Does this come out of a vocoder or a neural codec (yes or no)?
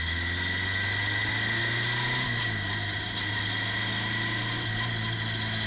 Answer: no